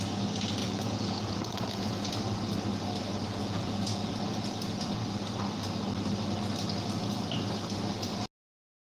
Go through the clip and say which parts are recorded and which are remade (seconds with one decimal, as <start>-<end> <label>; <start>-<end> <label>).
0.0-0.6 recorded; 0.6-2.1 remade; 2.1-3.4 recorded; 3.4-4.1 remade; 4.1-8.8 recorded